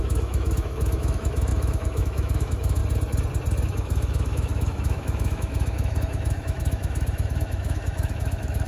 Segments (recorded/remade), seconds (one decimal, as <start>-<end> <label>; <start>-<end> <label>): 0.0-2.8 remade; 2.8-3.7 recorded; 3.7-8.7 remade